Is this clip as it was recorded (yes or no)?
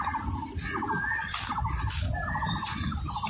yes